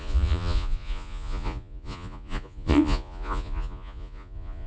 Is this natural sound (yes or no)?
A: no